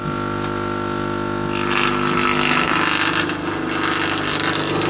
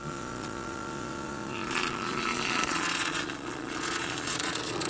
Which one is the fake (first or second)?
second